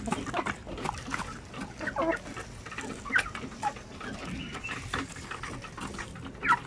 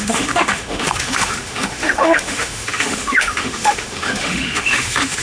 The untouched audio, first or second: first